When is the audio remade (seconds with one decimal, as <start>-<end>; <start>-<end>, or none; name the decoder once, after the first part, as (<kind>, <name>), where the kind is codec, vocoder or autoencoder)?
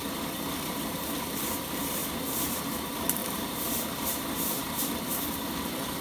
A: 0.0-2.0 (vocoder, BigVGAN v2); 2.6-6.0